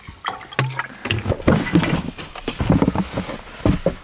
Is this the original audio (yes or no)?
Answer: yes